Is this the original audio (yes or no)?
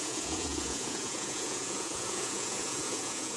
no